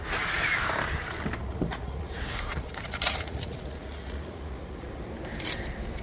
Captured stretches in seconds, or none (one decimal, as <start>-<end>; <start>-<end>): 0.0-1.4; 5.0-6.0